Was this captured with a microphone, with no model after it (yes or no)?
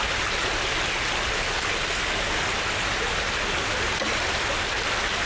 yes